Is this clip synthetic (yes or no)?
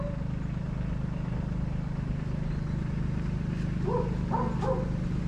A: no